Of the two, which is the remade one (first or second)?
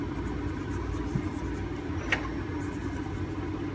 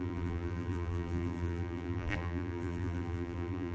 second